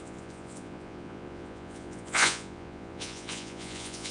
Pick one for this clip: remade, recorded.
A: remade